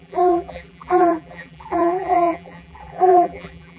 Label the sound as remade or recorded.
remade